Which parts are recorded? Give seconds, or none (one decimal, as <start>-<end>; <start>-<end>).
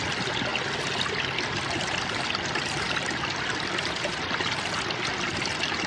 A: 0.0-0.5; 4.0-5.9